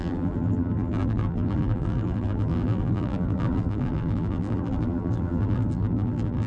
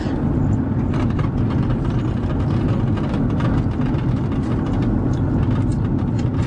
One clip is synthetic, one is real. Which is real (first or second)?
second